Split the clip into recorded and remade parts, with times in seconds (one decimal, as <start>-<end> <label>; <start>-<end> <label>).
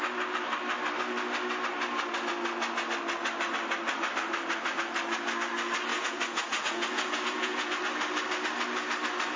0.0-5.9 recorded; 5.9-7.7 remade; 7.7-9.4 recorded